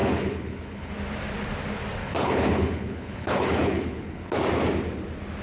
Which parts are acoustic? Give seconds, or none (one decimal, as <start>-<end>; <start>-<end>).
0.9-2.0; 4.4-5.4